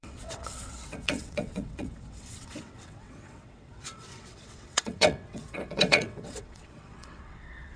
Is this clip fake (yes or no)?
yes